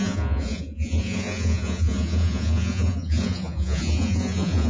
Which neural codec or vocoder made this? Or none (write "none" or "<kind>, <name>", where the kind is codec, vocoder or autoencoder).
vocoder, Vocos